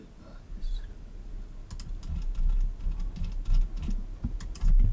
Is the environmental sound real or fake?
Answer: real